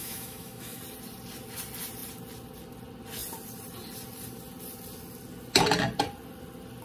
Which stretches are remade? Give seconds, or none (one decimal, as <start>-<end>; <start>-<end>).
0.0-0.8